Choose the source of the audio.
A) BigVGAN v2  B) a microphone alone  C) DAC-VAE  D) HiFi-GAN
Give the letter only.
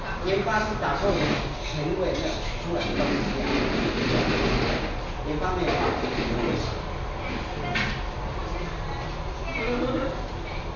B